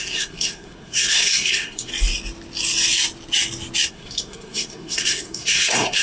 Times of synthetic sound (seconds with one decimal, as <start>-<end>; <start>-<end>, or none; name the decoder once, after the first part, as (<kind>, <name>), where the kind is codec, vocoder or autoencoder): 0.0-1.9 (codec, SNAC); 3.9-6.0